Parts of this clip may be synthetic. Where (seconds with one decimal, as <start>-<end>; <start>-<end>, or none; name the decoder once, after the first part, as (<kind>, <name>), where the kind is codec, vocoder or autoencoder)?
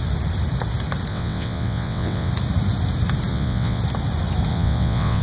1.1-2.3 (vocoder, WaveNeXt); 3.3-3.8; 4.5-5.2